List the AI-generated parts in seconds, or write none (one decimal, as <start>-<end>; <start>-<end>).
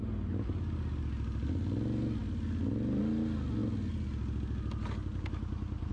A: none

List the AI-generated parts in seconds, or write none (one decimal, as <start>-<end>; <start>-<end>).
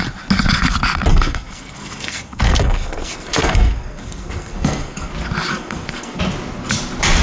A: 1.1-5.1; 5.5-6.2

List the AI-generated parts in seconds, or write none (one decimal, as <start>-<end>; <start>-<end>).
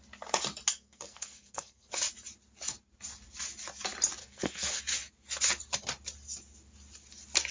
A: 0.7-1.9; 4.2-4.8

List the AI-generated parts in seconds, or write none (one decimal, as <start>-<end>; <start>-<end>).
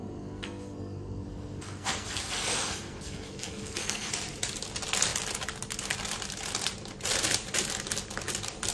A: 0.0-4.1